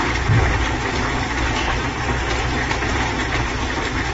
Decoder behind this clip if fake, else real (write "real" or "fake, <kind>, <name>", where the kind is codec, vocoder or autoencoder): fake, vocoder, BigVGAN v2